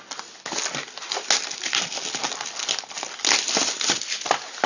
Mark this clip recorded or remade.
recorded